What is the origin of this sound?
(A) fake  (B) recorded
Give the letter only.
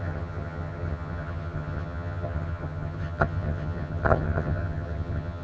A